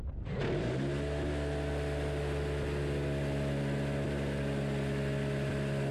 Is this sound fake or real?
real